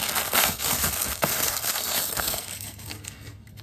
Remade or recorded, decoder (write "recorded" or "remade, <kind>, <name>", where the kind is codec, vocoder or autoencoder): remade, codec, SNAC